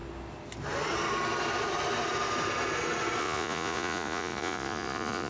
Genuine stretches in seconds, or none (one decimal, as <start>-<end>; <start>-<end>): 0.0-3.2